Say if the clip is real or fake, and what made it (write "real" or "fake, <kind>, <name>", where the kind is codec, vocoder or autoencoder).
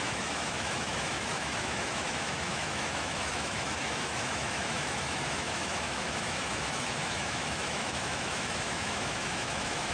fake, autoencoder, DAC-VAE